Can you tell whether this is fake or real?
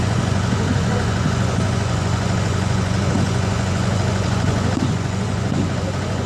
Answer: fake